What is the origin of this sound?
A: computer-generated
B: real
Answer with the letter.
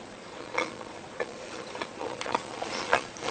A